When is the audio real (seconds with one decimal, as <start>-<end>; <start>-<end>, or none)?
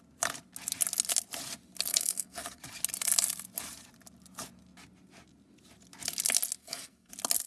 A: 0.0-1.9; 2.6-6.6; 7.1-7.5